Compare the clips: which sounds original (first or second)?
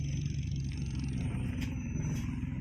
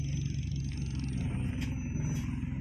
second